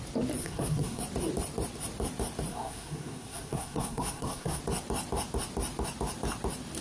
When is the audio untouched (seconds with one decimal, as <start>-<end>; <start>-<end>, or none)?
0.0-0.4; 1.0-2.5; 4.6-6.8